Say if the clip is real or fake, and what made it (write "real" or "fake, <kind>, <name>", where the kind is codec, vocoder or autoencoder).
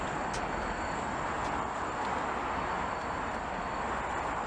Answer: real